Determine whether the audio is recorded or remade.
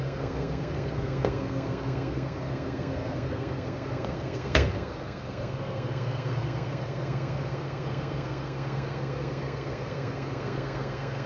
remade